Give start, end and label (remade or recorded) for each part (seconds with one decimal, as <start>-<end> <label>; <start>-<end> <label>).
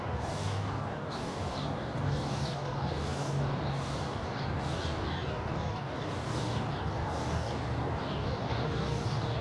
0.0-9.4 remade